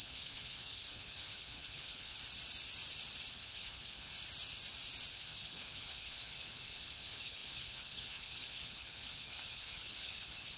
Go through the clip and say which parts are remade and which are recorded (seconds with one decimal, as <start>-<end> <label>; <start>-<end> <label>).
0.0-2.2 remade; 2.2-3.3 recorded; 3.3-4.1 remade; 4.1-5.1 recorded; 5.1-10.6 remade